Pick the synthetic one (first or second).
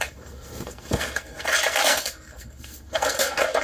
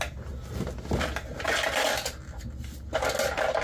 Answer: first